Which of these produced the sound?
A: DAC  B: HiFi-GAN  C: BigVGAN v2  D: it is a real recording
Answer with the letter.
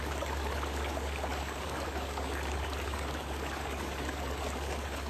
A